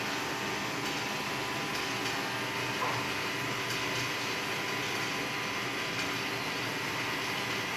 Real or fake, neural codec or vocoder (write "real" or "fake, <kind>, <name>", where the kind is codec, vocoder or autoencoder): real